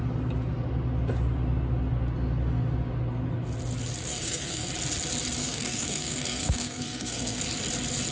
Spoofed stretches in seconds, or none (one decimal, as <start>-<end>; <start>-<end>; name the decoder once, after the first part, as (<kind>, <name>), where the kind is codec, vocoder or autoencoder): 4.1-4.7 (codec, SNAC); 5.4-7.4